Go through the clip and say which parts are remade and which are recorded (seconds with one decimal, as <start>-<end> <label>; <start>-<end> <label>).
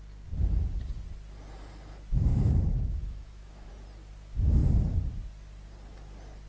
0.0-2.3 recorded; 2.3-3.7 remade; 3.7-6.5 recorded